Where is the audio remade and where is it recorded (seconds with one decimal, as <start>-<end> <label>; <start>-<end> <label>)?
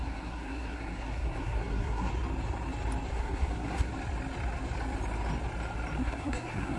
0.0-2.1 remade; 2.1-3.1 recorded; 3.1-3.9 remade; 3.9-6.0 recorded; 6.0-6.8 remade